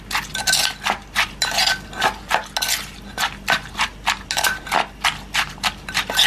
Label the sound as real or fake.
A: real